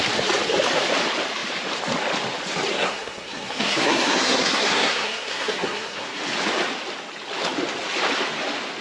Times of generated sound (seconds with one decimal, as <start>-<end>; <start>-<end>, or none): 2.7-6.2